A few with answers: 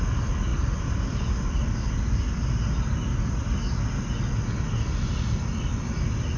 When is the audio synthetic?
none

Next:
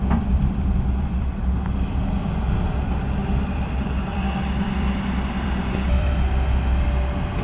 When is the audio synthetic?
0.0-1.4 (vocoder, BigVGAN v2); 3.2-6.1

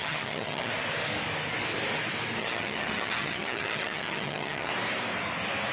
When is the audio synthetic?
0.0-0.7 (vocoder, HiFi-GAN); 2.4-4.7